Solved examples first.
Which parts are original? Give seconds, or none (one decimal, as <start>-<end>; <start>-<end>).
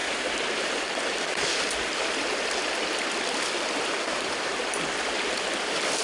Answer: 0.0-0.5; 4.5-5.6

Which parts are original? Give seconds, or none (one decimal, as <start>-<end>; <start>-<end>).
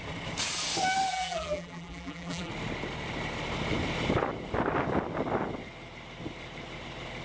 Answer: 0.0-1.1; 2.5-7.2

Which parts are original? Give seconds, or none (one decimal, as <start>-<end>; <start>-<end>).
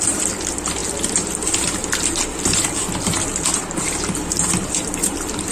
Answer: 0.8-3.8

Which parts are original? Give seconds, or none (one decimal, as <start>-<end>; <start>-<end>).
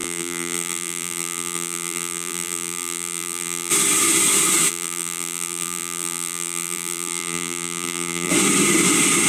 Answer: 3.7-4.7; 8.3-9.3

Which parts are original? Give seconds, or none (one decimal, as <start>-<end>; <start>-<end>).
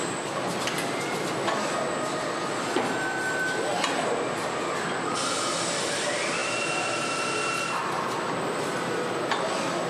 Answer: 0.0-9.9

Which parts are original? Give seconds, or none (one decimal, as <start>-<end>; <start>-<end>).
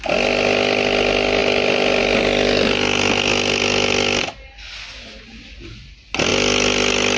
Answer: 0.0-7.2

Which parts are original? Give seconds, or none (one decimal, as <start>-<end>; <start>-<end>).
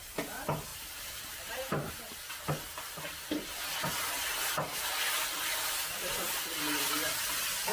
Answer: 0.0-0.7; 1.9-7.7